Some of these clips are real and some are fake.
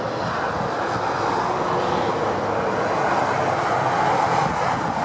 real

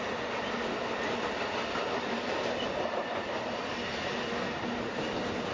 real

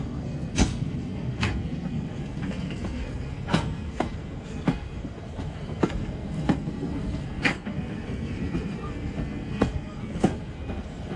fake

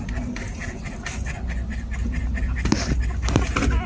real